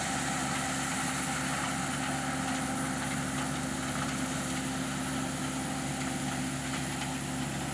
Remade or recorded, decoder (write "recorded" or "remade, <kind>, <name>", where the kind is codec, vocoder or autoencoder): recorded